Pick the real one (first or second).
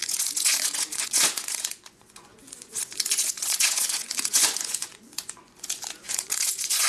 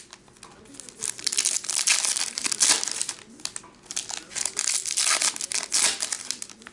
second